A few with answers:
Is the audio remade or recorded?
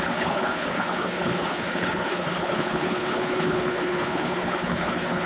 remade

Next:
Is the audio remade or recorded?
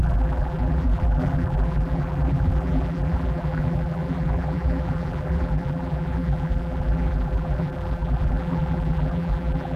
remade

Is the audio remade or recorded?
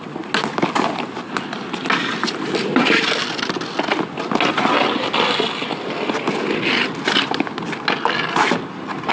recorded